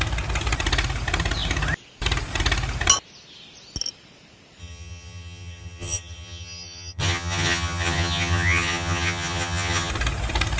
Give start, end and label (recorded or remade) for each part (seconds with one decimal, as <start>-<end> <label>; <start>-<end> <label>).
0.0-4.6 recorded; 4.6-9.9 remade; 9.9-10.6 recorded